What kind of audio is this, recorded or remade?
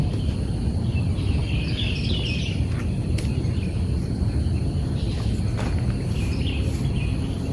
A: recorded